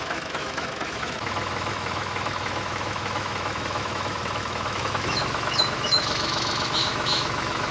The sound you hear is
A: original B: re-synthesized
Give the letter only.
B